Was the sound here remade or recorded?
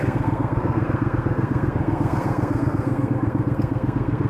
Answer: remade